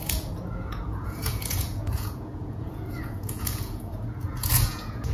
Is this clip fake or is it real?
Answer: fake